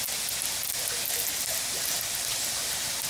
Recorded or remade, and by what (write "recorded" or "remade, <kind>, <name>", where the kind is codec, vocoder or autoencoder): recorded